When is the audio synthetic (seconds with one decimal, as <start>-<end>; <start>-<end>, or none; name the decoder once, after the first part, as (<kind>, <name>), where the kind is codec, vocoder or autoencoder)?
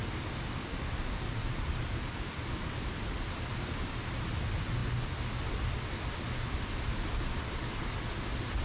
none